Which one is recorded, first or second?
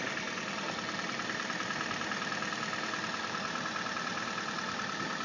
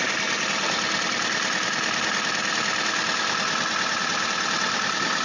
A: second